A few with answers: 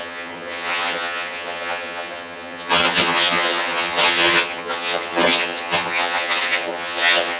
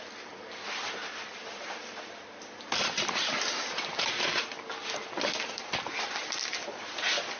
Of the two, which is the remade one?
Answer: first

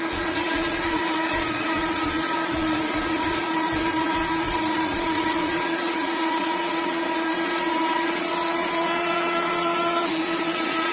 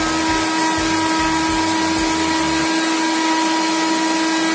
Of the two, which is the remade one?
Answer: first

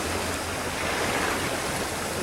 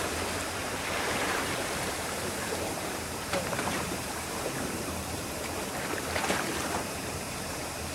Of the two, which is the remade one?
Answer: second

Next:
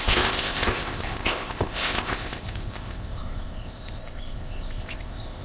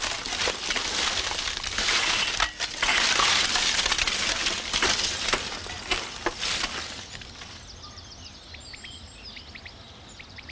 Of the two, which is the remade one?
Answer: first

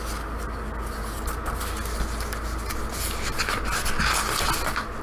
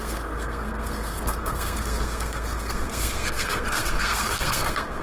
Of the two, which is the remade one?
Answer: second